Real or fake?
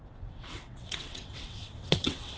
fake